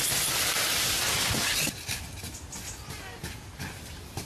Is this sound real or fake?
real